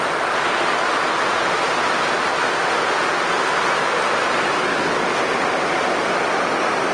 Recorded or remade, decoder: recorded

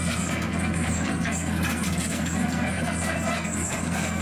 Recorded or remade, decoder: remade, codec, SNAC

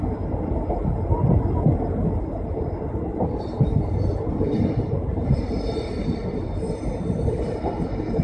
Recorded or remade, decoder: recorded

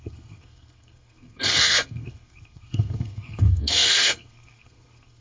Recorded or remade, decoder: remade, codec, SNAC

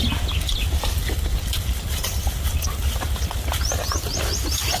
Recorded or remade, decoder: recorded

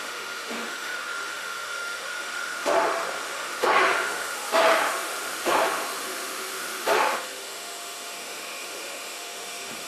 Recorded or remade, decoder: remade, autoencoder, DAC-VAE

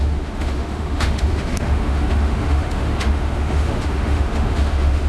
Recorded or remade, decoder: remade, autoencoder, DAC-VAE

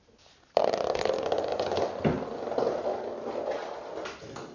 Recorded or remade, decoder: recorded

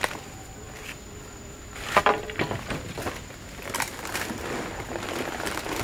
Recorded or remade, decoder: recorded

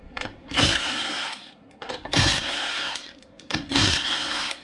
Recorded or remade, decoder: remade, codec, SNAC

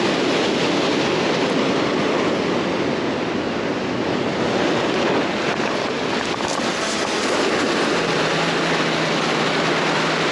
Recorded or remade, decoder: recorded